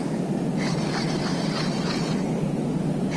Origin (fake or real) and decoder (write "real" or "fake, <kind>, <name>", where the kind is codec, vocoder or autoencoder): real